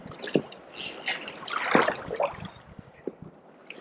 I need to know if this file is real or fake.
real